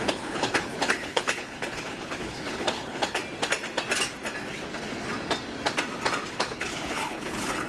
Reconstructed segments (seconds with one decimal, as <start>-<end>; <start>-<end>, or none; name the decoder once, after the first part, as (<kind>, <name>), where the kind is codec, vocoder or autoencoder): 0.0-3.2 (codec, HILCodec); 6.3-7.7